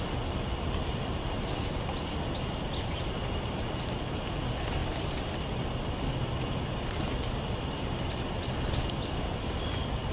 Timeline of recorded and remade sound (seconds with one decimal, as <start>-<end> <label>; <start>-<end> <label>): 0.0-4.8 recorded; 4.8-5.3 remade; 5.3-10.1 recorded